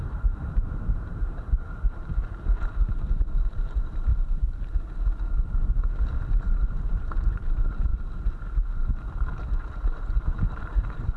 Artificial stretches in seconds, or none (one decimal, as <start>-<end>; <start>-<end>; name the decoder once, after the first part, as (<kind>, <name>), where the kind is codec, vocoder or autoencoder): 0.0-2.1 (vocoder, BigVGAN v2); 3.5-4.1; 6.4-7.9; 10.2-11.2